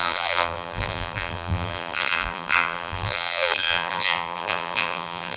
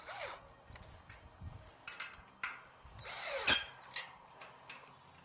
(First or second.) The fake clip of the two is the first